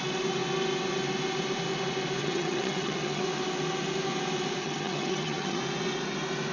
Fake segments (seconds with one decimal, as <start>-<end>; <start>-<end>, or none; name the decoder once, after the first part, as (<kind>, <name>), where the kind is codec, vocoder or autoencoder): 2.2-3.2 (vocoder, HiFi-GAN); 4.6-5.6

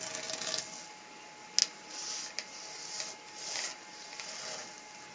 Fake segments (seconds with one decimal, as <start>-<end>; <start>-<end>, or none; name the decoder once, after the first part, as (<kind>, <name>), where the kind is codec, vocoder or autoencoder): none

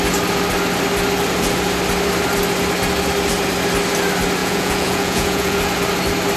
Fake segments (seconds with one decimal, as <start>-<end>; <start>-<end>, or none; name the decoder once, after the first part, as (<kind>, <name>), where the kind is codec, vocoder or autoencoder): 4.4-5.6 (vocoder, Vocos)

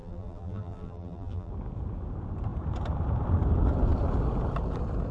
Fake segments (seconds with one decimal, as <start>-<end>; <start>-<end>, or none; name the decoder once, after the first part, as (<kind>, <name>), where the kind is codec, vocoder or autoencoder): 0.0-1.5 (vocoder, BigVGAN v2)

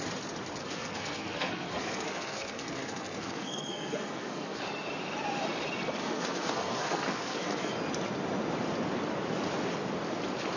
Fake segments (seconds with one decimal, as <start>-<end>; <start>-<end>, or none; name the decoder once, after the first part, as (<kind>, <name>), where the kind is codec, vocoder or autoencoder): 0.6-4.6 (codec, SNAC); 6.0-7.7